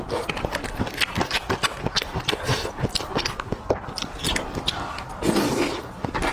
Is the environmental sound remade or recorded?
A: recorded